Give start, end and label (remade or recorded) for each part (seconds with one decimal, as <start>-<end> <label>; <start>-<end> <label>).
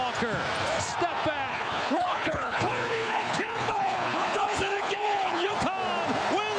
0.0-1.5 recorded; 1.5-5.5 remade; 5.5-6.6 recorded